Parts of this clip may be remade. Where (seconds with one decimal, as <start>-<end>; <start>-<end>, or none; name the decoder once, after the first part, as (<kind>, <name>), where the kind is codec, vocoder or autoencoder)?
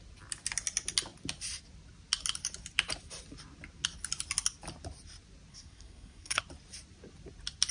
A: 5.5-6.4 (codec, SNAC)